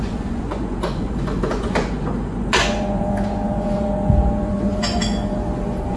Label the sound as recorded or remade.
remade